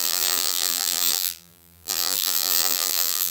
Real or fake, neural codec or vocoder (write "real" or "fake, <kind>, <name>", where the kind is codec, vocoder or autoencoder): fake, vocoder, BigVGAN v2